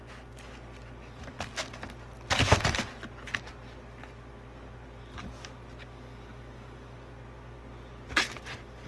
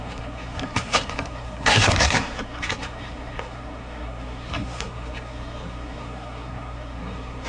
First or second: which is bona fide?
first